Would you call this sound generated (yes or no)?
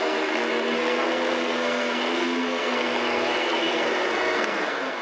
yes